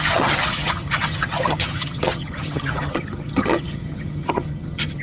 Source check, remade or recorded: remade